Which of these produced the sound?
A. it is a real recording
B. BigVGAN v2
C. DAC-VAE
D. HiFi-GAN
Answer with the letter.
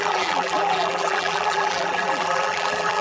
B